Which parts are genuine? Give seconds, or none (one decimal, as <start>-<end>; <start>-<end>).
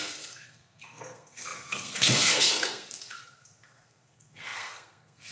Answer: none